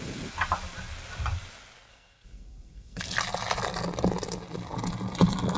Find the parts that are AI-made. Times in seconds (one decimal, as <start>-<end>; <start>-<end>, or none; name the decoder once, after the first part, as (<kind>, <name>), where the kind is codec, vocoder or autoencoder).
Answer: 1.9-3.0 (codec, SNAC)